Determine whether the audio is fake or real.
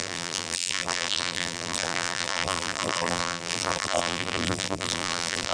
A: fake